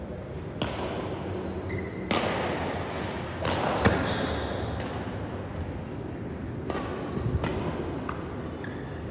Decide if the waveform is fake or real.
real